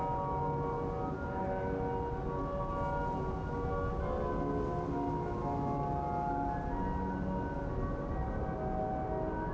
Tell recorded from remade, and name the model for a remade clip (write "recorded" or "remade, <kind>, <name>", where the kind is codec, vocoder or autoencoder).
recorded